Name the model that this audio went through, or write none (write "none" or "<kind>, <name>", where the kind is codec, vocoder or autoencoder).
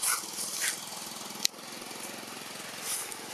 none